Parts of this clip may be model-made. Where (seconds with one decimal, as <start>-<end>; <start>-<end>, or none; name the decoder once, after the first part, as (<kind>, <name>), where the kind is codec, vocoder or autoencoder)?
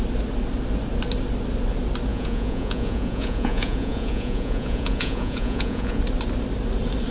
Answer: 2.1-6.0 (vocoder, Vocos)